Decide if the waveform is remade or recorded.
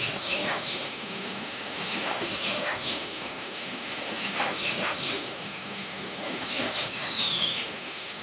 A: remade